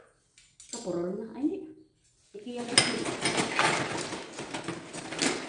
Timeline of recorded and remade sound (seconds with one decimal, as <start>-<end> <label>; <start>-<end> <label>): 0.0-5.5 recorded